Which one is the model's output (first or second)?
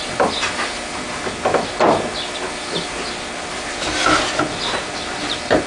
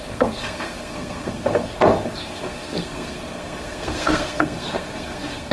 second